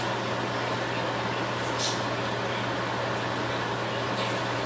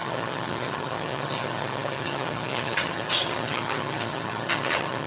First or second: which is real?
first